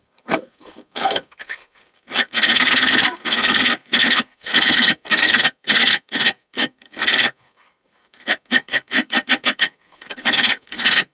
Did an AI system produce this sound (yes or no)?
yes